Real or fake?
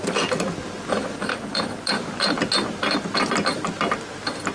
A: real